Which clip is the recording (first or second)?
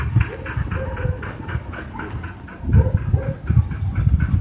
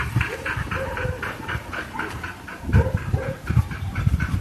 first